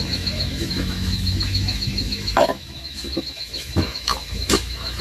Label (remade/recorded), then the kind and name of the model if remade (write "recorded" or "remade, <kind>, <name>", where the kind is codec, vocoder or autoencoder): remade, autoencoder, DAC-VAE